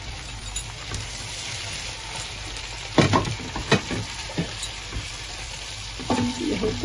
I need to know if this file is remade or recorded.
remade